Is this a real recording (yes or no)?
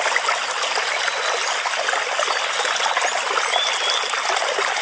yes